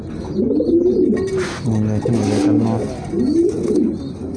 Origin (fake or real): real